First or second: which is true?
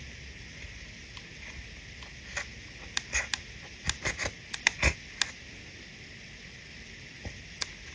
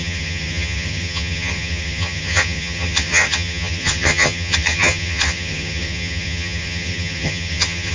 first